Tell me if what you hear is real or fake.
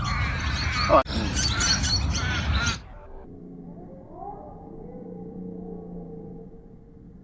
real